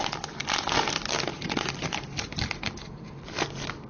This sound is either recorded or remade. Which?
recorded